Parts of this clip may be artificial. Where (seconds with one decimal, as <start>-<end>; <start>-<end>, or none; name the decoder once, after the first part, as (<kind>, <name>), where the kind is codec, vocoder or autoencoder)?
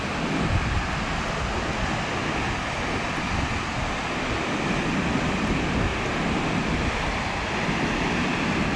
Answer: none